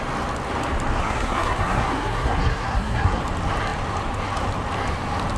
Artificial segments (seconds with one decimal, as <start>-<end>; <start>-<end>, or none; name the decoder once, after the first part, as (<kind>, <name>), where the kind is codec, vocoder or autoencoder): 1.0-3.2 (codec, SNAC)